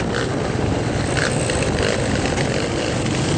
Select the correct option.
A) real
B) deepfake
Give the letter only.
A